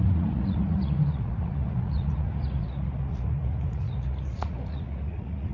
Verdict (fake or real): fake